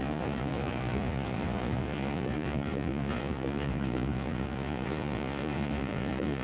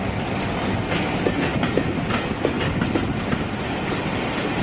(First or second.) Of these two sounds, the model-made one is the first